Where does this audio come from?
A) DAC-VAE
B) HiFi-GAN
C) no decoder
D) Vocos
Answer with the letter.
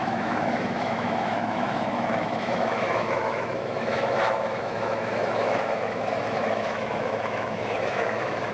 A